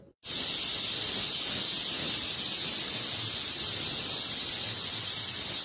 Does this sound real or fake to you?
real